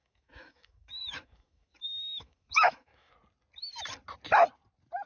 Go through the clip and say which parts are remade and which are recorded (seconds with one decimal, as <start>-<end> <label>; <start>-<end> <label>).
0.0-3.1 remade; 3.1-5.1 recorded